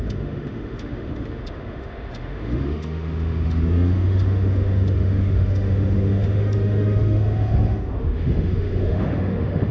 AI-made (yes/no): yes